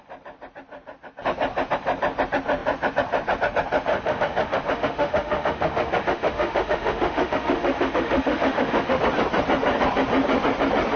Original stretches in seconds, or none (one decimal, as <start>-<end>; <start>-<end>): 0.0-3.9; 9.0-11.0